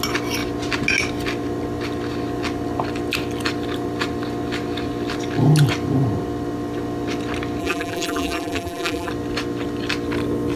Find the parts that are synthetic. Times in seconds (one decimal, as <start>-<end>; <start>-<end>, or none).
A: 7.6-9.1

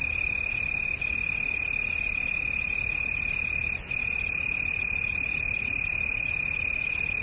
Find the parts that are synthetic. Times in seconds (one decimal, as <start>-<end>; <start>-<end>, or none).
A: none

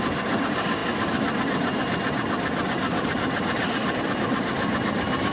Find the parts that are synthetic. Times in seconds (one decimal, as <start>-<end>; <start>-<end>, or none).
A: none

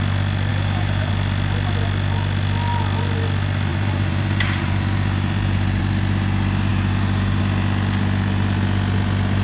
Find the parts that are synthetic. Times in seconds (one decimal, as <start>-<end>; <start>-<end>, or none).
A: 0.5-1.1; 3.7-5.8; 6.7-7.4

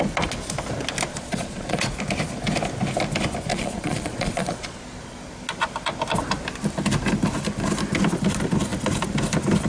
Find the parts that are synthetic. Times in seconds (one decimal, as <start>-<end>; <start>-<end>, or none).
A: 1.1-1.9; 3.5-4.8

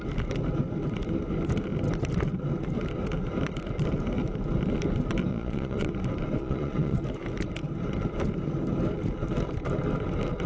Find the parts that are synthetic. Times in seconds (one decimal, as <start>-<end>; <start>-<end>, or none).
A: 5.3-5.9; 6.4-7.0